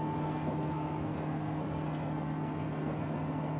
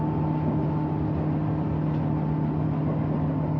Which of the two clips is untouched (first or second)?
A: second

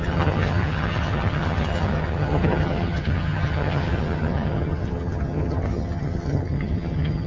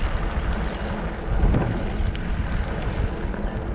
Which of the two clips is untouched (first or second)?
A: second